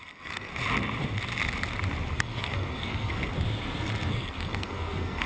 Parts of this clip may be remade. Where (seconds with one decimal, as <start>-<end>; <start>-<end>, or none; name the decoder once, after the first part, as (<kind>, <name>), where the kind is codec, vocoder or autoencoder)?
0.0-0.5 (codec, SNAC); 2.1-3.3; 4.1-5.3